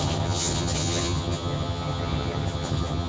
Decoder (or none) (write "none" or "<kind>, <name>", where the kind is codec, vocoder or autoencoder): vocoder, HiFi-GAN